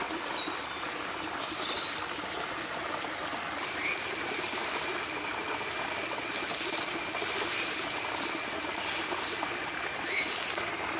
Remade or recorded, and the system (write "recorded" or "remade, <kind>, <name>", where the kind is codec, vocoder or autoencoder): recorded